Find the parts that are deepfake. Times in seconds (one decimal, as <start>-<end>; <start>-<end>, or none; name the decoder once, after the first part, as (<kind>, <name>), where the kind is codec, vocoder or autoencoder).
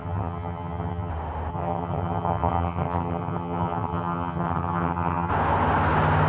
0.0-1.1 (vocoder, HiFi-GAN); 1.5-5.3